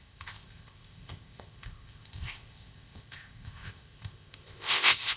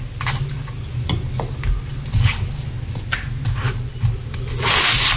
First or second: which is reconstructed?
first